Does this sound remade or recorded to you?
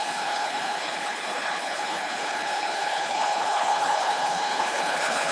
remade